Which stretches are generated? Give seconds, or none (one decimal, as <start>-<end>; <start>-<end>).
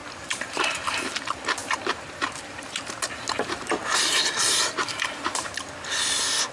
0.0-0.9; 1.6-5.5